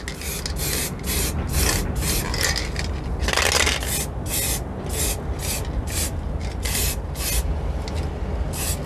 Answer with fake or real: real